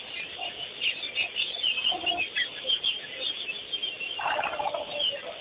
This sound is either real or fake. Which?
real